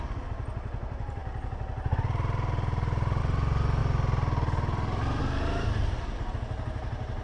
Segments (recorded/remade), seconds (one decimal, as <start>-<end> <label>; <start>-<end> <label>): 0.0-7.2 recorded